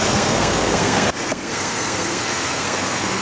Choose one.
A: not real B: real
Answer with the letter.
A